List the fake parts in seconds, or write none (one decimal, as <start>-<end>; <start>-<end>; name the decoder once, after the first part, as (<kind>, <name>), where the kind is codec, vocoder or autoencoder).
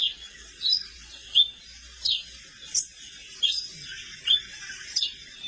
3.3-3.9 (vocoder, BigVGAN v2); 4.5-5.5